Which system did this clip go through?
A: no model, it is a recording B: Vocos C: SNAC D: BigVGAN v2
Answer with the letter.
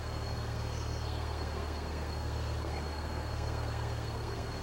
C